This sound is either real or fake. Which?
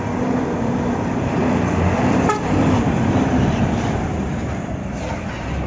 fake